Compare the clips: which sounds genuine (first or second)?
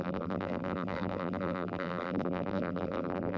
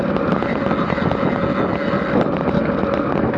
second